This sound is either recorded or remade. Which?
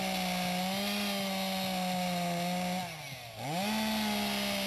recorded